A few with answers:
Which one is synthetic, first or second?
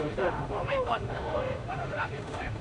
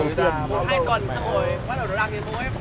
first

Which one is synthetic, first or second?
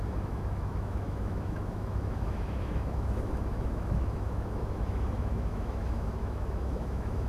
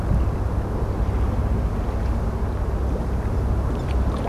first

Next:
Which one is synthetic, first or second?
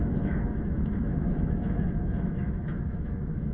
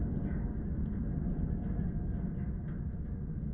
first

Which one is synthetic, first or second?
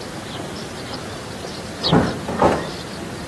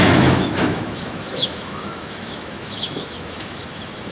second